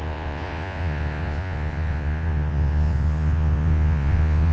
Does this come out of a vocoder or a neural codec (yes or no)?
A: yes